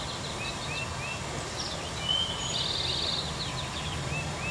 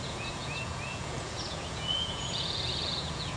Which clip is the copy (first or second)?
second